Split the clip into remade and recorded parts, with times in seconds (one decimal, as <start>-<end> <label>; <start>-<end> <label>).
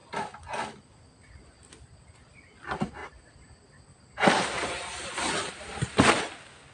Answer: 0.0-3.0 recorded; 3.0-6.2 remade; 6.2-6.7 recorded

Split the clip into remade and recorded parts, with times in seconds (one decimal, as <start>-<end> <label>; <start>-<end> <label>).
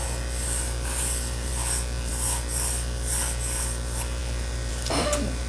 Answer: 0.0-1.5 remade; 1.5-2.1 recorded; 2.1-4.2 remade; 4.2-4.7 recorded; 4.7-5.5 remade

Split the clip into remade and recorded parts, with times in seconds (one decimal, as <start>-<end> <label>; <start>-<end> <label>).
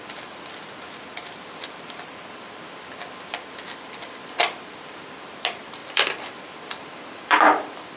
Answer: 0.0-4.4 remade; 4.4-5.0 recorded; 5.0-8.0 remade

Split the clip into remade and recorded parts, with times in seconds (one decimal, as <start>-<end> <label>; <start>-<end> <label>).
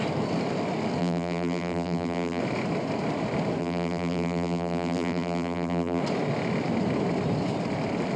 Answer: 0.0-1.0 recorded; 1.0-2.4 remade; 2.4-3.6 recorded; 3.6-6.0 remade; 6.0-8.2 recorded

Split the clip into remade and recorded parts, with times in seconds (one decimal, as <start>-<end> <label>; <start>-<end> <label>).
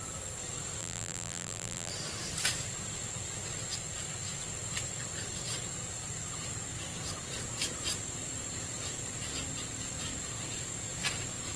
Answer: 0.0-0.8 recorded; 0.8-1.9 remade; 1.9-11.6 recorded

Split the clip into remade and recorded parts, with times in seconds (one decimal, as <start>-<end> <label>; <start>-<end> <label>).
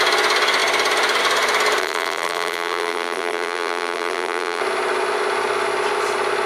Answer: 0.0-1.8 recorded; 1.8-4.6 remade; 4.6-6.5 recorded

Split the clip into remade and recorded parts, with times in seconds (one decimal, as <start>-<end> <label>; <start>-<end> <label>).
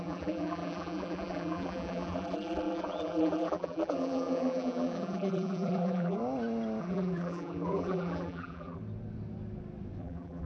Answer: 0.0-6.2 remade; 6.2-6.8 recorded; 6.8-8.8 remade; 8.8-10.0 recorded; 10.0-10.5 remade